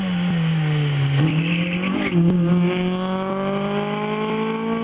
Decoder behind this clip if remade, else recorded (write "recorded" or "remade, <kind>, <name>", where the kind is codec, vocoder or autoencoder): recorded